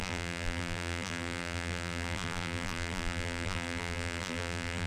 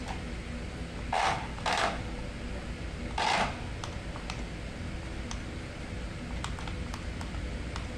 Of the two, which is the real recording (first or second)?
second